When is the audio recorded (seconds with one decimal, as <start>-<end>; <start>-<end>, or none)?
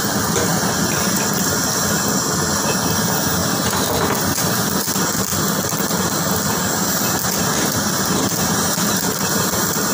0.0-9.9